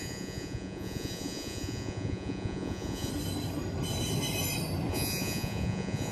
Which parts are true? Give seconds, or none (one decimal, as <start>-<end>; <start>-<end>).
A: 3.1-4.9